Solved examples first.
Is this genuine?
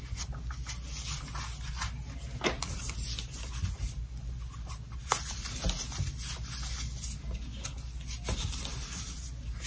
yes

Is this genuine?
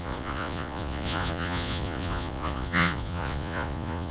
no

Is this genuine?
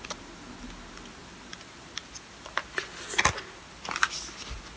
yes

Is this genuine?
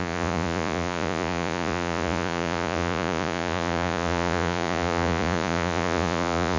no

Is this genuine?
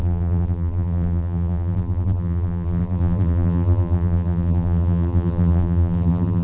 no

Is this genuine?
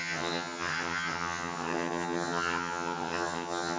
no